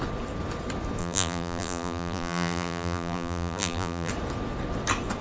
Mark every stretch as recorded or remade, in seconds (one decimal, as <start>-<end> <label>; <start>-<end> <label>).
0.0-1.0 recorded; 1.0-4.1 remade; 4.1-5.2 recorded